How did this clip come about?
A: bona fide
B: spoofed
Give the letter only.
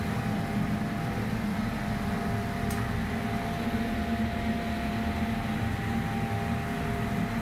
A